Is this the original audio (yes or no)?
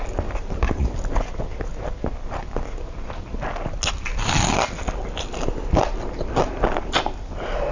yes